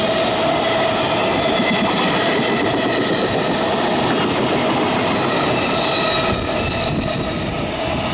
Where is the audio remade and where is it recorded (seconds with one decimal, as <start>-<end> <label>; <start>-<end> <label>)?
0.0-8.1 recorded